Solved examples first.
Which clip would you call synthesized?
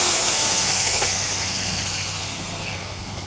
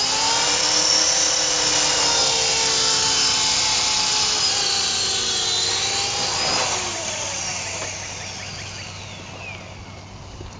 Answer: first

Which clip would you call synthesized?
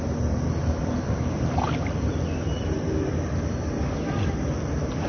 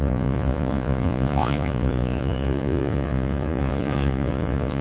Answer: second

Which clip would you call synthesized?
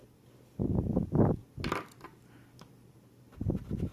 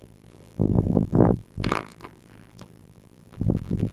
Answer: second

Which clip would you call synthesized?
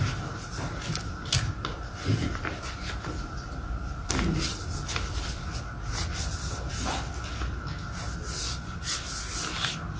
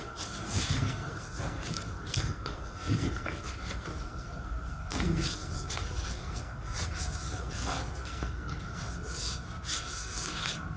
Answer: second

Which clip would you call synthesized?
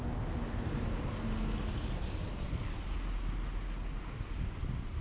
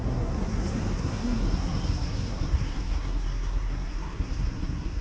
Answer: second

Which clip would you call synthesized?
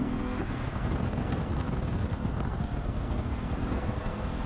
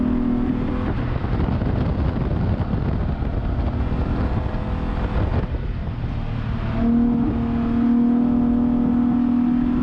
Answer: first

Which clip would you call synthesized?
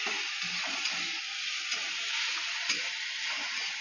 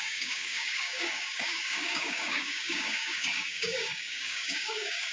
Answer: second